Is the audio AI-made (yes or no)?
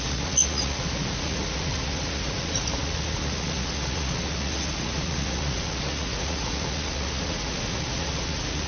yes